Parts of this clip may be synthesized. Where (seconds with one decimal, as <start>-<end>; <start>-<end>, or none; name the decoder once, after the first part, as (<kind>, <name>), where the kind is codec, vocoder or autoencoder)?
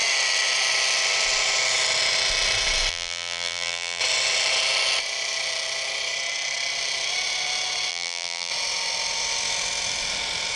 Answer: 2.9-4.0 (vocoder, BigVGAN v2); 7.9-8.5